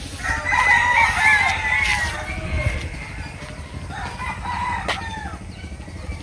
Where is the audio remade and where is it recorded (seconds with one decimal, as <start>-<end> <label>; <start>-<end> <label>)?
0.0-6.2 recorded